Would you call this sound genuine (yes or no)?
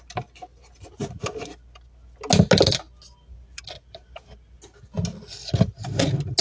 yes